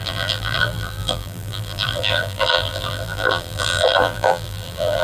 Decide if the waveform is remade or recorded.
remade